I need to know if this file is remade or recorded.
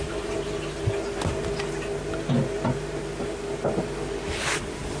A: recorded